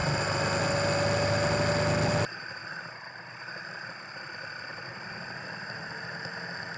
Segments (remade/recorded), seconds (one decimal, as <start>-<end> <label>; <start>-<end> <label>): 0.0-6.8 recorded